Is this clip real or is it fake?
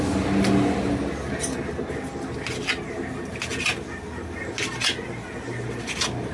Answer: real